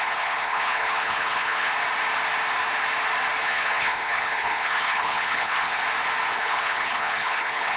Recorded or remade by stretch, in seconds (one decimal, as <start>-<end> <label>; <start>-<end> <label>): 0.0-1.7 remade; 1.7-3.4 recorded; 3.4-5.8 remade; 5.8-6.3 recorded; 6.3-7.8 remade